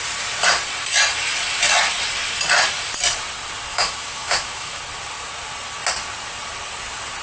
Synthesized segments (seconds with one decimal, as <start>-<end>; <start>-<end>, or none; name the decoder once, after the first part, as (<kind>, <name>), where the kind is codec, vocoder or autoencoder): 3.7-4.8 (autoencoder, DAC-VAE)